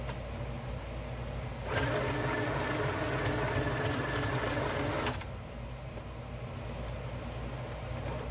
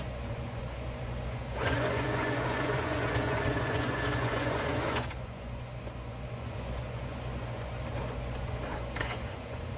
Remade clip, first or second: second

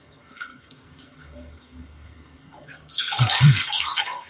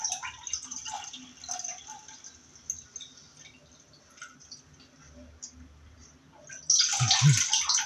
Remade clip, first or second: first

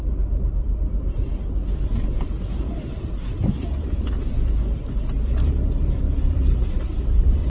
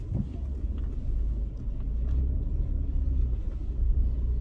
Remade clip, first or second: first